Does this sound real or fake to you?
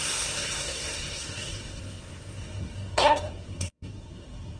fake